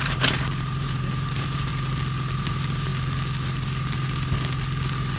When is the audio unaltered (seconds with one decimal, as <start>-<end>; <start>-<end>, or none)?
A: 1.7-2.4; 2.9-5.2